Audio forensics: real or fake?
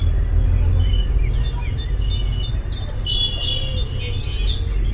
real